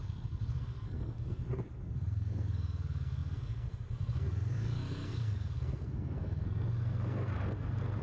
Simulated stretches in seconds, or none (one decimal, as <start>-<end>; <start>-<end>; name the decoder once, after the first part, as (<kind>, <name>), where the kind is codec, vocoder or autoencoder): 0.0-8.0 (codec, SNAC)